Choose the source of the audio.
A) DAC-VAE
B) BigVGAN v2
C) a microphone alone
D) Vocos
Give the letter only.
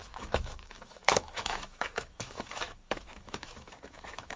A